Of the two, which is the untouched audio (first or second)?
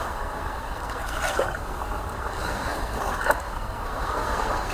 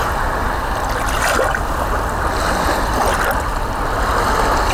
second